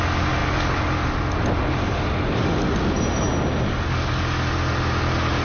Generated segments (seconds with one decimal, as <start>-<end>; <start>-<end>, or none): none